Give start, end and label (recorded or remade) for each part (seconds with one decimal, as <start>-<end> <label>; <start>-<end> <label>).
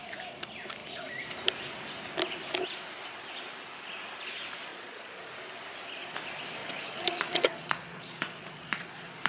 0.0-4.7 recorded; 4.7-5.3 remade; 5.3-6.6 recorded; 6.6-9.3 remade